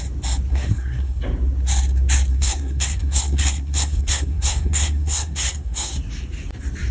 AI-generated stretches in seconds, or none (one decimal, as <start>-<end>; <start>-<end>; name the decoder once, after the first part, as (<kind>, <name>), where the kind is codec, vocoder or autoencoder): 0.5-1.2 (codec, SNAC); 2.3-6.0

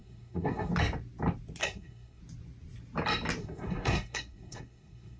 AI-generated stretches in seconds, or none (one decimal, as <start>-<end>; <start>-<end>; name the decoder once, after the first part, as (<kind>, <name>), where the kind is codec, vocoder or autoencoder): 0.0-0.7 (codec, SNAC); 1.6-2.2; 3.4-5.2

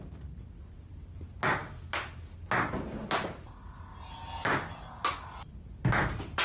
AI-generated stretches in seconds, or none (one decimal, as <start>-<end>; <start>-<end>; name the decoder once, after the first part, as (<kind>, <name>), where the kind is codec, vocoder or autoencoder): none

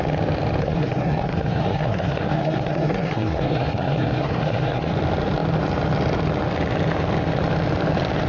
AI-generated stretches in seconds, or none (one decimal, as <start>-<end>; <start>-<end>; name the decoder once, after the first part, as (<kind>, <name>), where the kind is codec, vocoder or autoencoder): 0.6-4.9 (codec, SNAC)